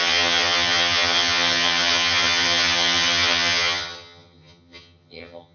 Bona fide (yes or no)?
no